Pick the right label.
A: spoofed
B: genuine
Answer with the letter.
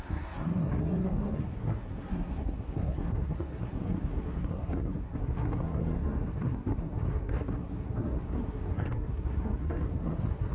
A